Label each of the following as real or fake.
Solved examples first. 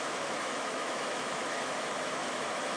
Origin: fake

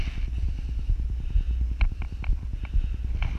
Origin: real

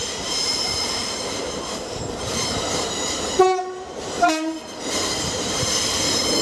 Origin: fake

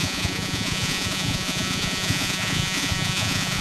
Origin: fake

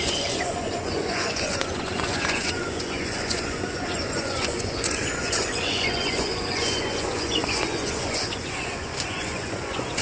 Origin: fake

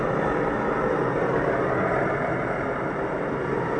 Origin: real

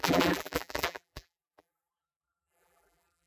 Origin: fake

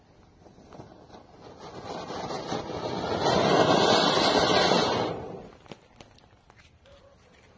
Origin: real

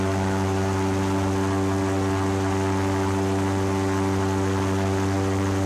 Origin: real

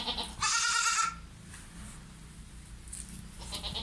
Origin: real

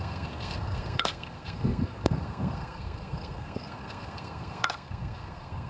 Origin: fake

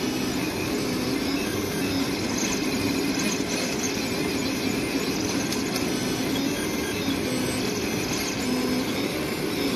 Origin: real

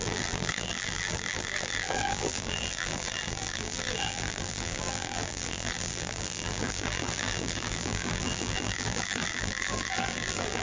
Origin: fake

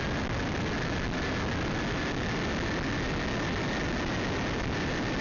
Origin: real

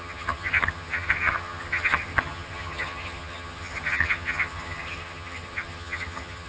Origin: fake